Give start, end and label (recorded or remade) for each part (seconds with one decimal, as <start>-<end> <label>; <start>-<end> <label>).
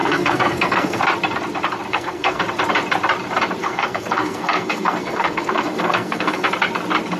0.0-1.0 remade; 1.0-1.9 recorded; 1.9-2.4 remade; 2.4-3.6 recorded; 3.6-6.5 remade; 6.5-7.2 recorded